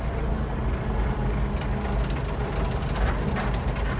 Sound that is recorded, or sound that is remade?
recorded